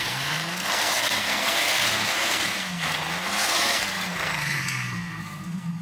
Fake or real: fake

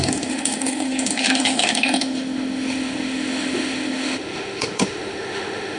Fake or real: fake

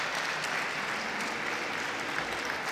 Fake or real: real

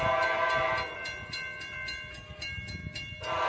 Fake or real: real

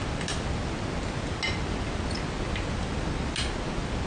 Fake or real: real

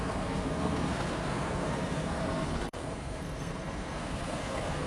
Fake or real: fake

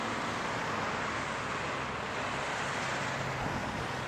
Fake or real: real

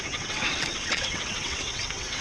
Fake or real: fake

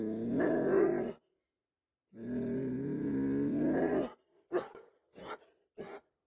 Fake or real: real